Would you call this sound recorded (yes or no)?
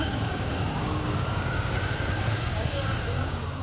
no